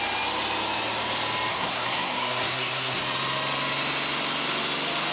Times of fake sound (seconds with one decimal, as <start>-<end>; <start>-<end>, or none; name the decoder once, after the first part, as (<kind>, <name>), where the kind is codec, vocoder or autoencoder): 1.5-3.0 (codec, SNAC)